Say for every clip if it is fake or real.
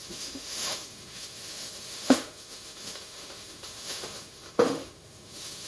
fake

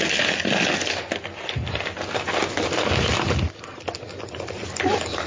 real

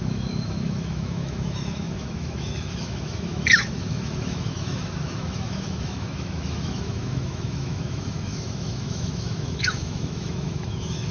fake